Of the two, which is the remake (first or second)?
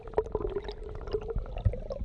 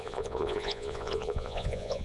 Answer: second